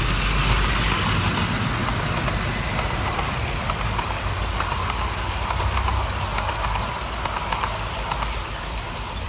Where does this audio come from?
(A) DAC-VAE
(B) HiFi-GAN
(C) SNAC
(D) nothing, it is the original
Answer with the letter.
D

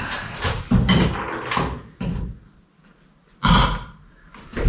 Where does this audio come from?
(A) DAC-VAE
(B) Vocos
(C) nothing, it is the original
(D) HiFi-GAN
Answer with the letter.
C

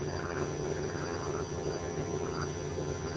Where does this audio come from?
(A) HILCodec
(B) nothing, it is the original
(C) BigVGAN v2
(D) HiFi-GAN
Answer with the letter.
D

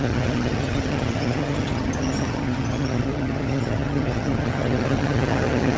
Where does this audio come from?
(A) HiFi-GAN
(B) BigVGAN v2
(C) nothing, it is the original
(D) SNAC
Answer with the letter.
A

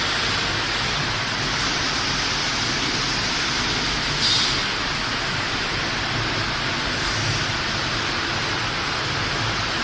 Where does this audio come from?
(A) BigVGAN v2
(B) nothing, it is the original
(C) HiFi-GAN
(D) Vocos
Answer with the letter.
B